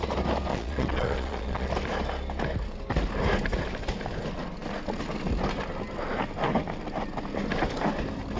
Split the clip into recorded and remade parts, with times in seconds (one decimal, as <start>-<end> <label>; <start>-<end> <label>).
0.0-0.5 recorded; 0.5-1.7 remade; 1.7-8.4 recorded